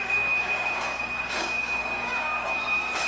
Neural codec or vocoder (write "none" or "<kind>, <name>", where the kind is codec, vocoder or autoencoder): codec, DAC